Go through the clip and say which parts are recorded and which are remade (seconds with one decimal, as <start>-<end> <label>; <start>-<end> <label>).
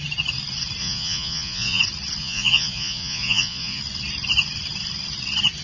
0.0-0.8 recorded; 0.8-1.8 remade; 1.8-2.2 recorded; 2.2-3.8 remade; 3.8-5.6 recorded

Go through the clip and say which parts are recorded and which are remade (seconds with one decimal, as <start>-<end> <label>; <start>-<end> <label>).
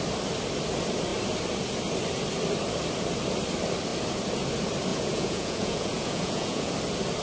0.0-4.9 recorded; 4.9-6.7 remade; 6.7-7.2 recorded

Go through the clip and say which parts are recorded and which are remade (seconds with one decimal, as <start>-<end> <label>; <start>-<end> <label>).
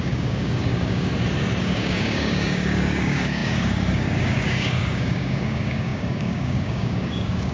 0.0-1.1 remade; 1.1-1.6 recorded; 1.6-7.5 remade